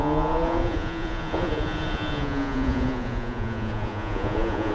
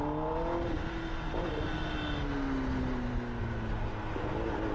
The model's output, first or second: first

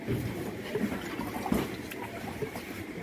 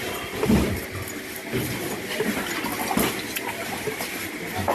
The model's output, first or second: first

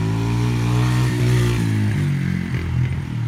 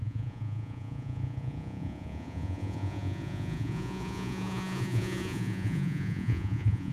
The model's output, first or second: second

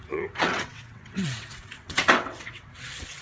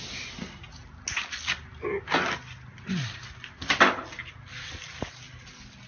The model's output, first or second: first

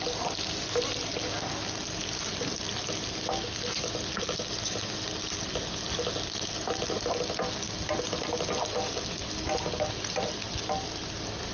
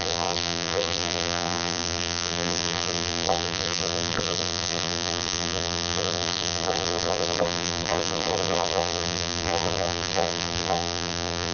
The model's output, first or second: second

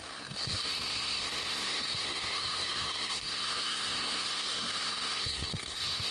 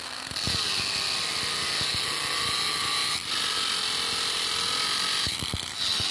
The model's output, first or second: first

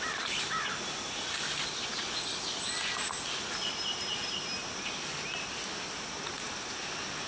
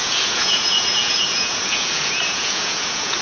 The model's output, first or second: second